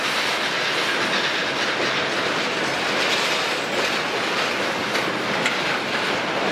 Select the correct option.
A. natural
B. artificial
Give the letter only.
A